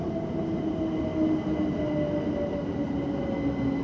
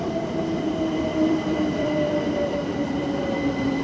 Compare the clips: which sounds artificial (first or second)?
second